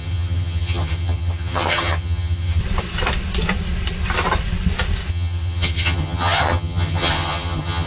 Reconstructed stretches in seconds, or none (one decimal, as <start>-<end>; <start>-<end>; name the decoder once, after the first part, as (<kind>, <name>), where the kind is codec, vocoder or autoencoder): 0.0-2.6 (vocoder, HiFi-GAN); 5.1-7.9